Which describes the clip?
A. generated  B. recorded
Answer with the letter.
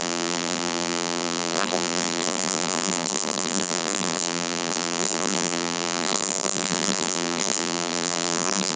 A